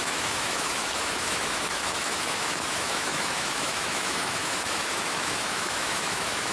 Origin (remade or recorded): remade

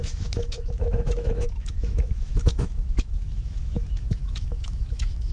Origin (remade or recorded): remade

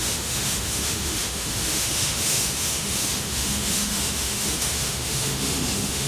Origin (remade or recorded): remade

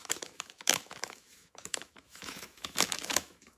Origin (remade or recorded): remade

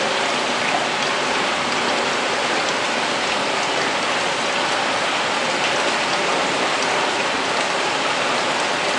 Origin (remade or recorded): recorded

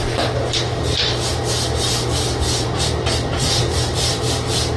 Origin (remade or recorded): recorded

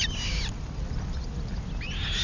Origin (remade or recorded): recorded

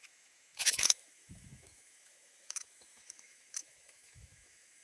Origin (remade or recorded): remade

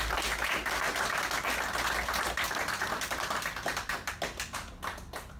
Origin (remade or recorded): recorded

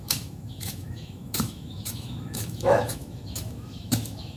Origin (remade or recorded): remade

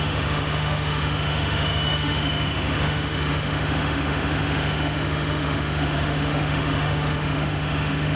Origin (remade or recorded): remade